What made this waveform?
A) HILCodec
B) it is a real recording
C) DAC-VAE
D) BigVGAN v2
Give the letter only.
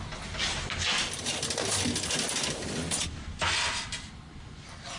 B